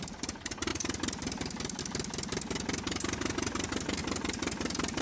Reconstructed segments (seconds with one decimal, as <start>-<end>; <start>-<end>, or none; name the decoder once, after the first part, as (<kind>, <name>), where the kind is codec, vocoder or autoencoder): 0.7-1.8 (vocoder, BigVGAN v2); 4.0-5.0